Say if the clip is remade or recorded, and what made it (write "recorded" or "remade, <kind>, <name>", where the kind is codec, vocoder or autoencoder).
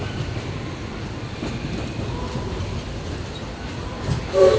recorded